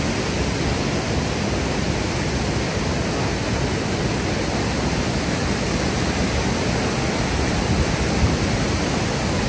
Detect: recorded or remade recorded